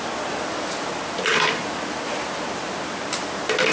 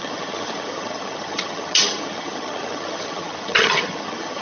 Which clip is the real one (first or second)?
first